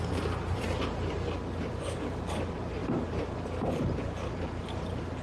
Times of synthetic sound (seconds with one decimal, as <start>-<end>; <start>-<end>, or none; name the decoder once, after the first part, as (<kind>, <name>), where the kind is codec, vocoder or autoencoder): none